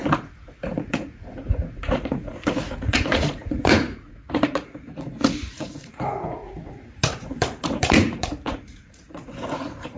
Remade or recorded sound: remade